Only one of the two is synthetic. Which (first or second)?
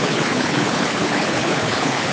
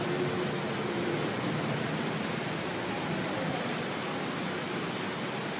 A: first